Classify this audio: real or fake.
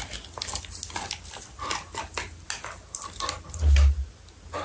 real